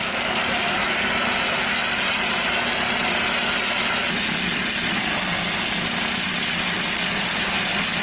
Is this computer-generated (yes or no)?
yes